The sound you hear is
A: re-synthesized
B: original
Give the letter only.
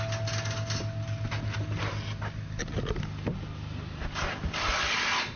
B